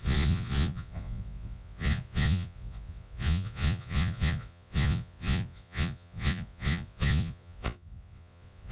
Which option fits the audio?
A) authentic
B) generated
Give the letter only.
B